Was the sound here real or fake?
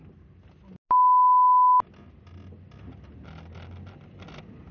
real